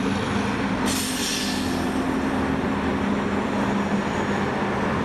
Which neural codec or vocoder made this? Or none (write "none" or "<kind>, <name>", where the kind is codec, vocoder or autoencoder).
none